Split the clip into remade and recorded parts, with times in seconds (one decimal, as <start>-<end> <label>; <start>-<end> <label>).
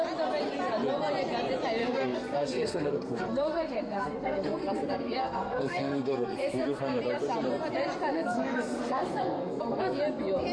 0.0-1.8 recorded; 1.8-7.0 remade; 7.0-8.1 recorded; 8.1-10.0 remade; 10.0-10.5 recorded